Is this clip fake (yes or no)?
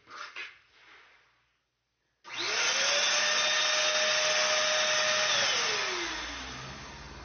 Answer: no